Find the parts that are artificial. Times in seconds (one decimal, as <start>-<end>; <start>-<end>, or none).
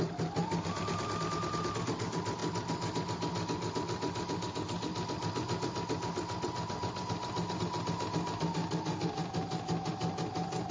none